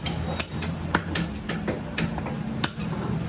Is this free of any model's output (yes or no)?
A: yes